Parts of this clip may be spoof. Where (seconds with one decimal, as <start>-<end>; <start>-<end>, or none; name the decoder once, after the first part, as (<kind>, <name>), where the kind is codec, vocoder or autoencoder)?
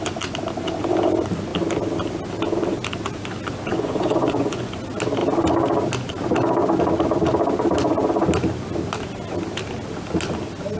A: 3.7-4.7 (vocoder, Vocos)